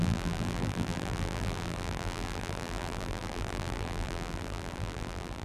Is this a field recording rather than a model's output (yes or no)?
no